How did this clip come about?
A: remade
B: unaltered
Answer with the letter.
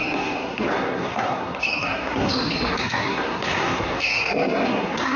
A